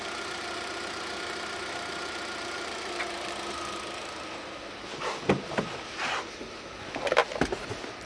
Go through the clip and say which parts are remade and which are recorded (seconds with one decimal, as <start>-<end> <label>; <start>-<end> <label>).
0.0-8.1 recorded